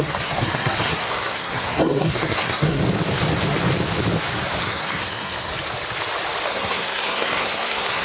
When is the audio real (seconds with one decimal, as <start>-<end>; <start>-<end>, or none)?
2.8-4.6; 5.5-6.5